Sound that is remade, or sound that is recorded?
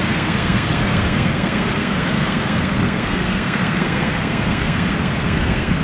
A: remade